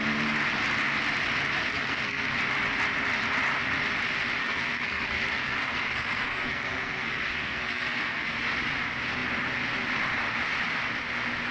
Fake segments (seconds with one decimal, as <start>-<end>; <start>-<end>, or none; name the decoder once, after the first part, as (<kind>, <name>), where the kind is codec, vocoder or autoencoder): 1.7-2.4 (codec, SNAC); 4.4-8.4